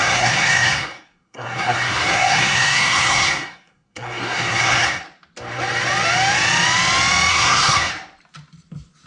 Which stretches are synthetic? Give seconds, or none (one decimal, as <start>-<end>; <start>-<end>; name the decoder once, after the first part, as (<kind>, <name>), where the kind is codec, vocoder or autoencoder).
0.0-5.0 (codec, SNAC); 7.3-7.9